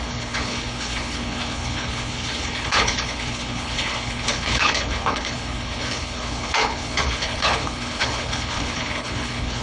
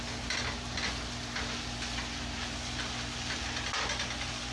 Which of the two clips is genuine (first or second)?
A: second